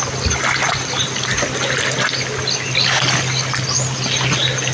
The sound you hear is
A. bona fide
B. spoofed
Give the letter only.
A